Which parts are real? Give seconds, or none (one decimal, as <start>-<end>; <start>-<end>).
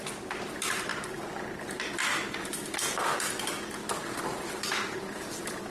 0.0-5.7